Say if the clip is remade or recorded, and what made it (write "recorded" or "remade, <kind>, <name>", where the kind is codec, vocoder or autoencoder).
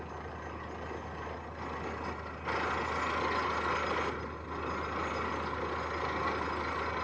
recorded